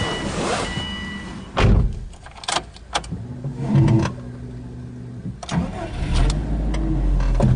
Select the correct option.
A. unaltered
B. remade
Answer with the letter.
A